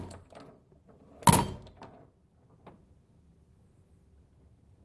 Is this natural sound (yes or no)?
yes